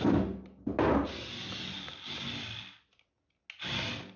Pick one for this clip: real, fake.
real